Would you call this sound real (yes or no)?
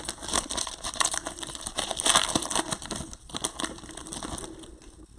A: yes